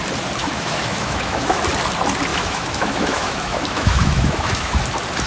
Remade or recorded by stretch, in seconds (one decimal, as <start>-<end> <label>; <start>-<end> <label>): 0.0-0.4 recorded; 0.4-1.6 remade; 1.6-2.3 recorded; 2.3-4.8 remade; 4.8-5.3 recorded